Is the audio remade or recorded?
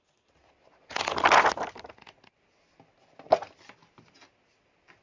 recorded